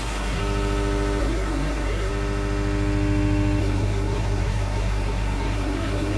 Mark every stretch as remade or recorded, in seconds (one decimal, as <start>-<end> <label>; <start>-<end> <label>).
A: 0.0-0.4 remade; 0.4-1.2 recorded; 1.2-2.1 remade; 2.1-3.6 recorded; 3.6-6.2 remade